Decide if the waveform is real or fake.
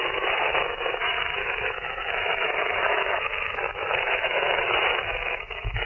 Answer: fake